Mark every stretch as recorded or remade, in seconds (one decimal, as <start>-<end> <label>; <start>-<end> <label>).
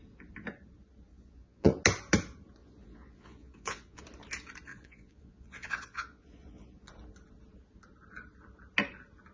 0.0-1.1 recorded; 1.1-1.8 remade; 1.8-2.6 recorded; 2.6-4.0 remade; 4.0-4.7 recorded; 4.7-6.9 remade; 6.9-9.3 recorded